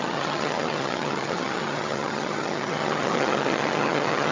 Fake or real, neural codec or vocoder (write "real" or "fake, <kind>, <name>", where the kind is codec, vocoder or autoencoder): fake, vocoder, HiFi-GAN